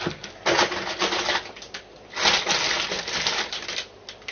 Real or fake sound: real